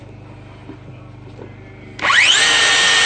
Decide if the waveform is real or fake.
real